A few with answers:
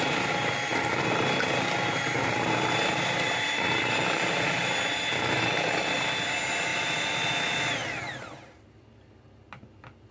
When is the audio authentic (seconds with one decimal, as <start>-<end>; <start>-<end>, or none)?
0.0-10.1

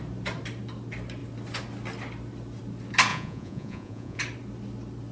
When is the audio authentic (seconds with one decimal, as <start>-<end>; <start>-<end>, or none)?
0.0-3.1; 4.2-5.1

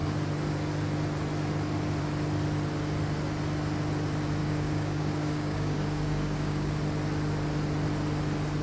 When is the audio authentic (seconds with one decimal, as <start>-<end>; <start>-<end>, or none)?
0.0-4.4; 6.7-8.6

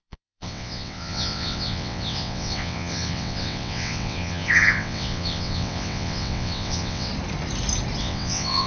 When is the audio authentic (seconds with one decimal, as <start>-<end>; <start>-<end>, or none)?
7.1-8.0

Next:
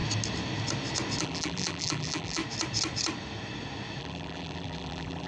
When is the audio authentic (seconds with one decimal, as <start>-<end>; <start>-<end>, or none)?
0.0-1.2; 2.4-4.0

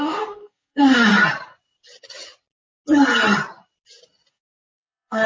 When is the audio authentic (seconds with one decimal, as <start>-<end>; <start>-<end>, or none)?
1.1-4.3

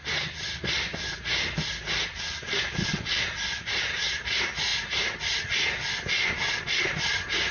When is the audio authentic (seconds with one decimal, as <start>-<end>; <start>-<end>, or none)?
0.0-7.5

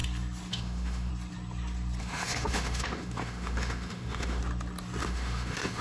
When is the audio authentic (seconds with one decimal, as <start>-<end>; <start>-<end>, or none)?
0.0-0.5; 1.1-2.0; 4.4-5.0